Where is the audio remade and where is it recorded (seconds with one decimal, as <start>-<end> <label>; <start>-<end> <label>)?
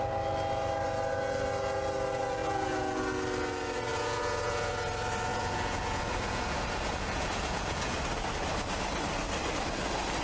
0.0-2.4 recorded; 2.4-3.0 remade; 3.0-3.9 recorded; 3.9-4.7 remade; 4.7-5.3 recorded; 5.3-8.0 remade; 8.0-10.2 recorded